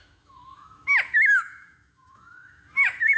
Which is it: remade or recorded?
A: remade